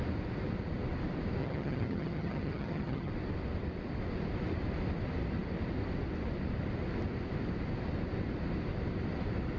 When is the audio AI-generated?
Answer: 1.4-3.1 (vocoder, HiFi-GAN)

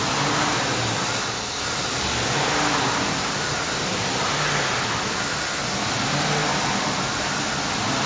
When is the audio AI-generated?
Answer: none

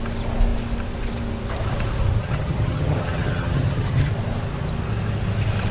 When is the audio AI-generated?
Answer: 2.2-4.1 (vocoder, HiFi-GAN)